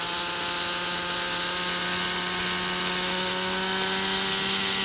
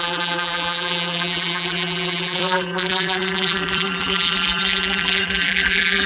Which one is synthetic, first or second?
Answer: second